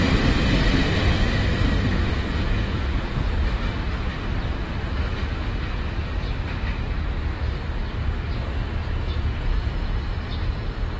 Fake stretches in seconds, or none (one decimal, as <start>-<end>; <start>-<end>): 1.9-3.3; 8.8-10.0